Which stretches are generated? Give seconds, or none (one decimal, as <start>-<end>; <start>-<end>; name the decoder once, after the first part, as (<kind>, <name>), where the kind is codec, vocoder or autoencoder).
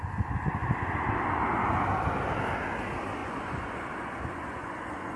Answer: 3.2-5.2 (vocoder, Vocos)